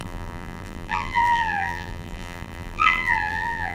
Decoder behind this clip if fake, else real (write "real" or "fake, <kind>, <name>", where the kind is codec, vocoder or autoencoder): fake, vocoder, BigVGAN v2